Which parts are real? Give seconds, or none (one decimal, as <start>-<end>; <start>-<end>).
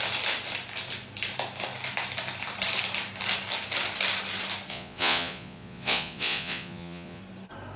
0.0-4.7; 7.2-7.8